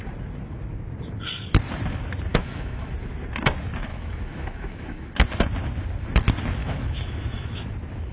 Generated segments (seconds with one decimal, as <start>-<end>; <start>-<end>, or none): 2.3-2.9; 3.9-5.1; 6.6-7.6